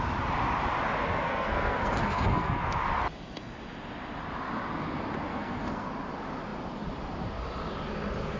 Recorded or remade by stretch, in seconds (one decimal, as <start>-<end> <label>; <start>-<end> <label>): 0.0-1.1 recorded; 1.1-2.8 remade; 2.8-5.3 recorded; 5.3-5.9 remade; 5.9-8.4 recorded